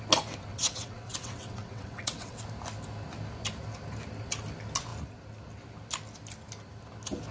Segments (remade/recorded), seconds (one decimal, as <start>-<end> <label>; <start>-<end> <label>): 0.0-0.5 recorded; 0.5-2.4 remade; 2.4-7.3 recorded